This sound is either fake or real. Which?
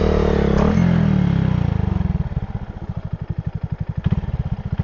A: real